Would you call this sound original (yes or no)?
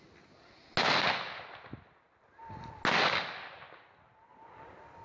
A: yes